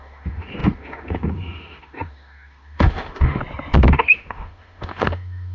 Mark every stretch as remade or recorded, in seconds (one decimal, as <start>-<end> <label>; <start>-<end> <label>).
0.0-3.4 remade; 3.4-3.9 recorded; 3.9-5.5 remade